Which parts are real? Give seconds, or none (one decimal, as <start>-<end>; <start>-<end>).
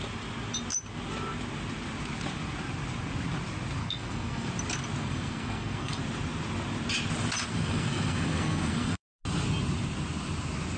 0.0-3.8; 4.5-5.0; 6.0-7.5; 9.2-10.8